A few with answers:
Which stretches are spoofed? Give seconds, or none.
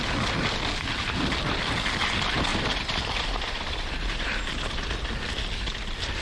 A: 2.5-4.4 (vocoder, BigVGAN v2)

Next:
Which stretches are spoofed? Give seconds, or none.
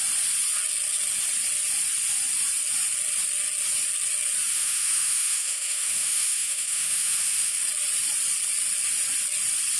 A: 4.5-7.6 (autoencoder, DAC-VAE)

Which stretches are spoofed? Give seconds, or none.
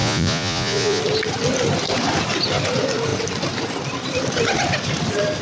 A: 0.0-1.0 (vocoder, Vocos)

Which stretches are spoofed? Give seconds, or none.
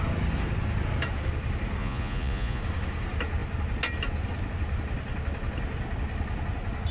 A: 1.8-2.6 (vocoder, Vocos)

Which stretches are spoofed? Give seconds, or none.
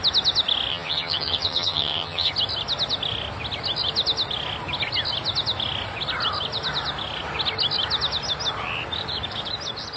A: 0.7-2.3 (vocoder, HiFi-GAN)